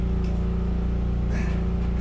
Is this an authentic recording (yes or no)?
yes